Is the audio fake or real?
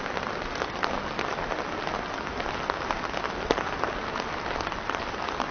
real